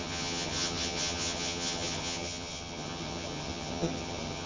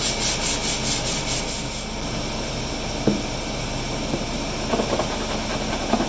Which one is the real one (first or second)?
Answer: second